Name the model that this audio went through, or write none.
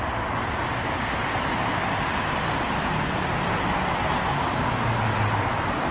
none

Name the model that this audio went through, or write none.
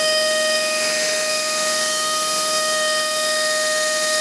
autoencoder, DAC-VAE